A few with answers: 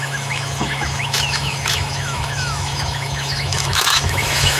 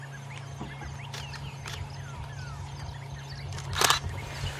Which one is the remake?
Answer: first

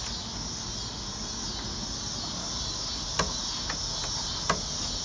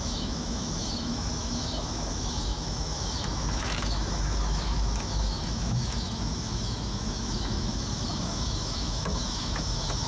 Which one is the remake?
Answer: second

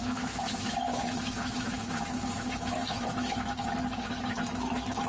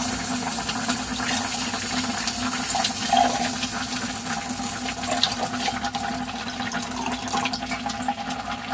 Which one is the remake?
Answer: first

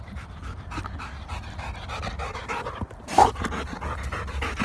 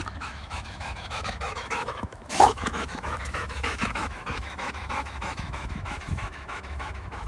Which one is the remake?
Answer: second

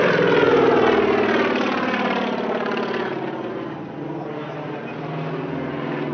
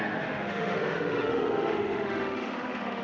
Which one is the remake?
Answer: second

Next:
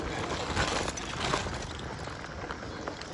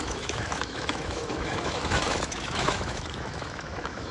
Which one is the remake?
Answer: second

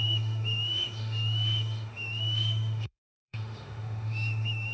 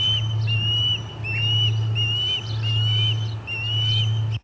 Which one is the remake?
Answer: first